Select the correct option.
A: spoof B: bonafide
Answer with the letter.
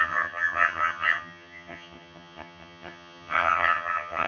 A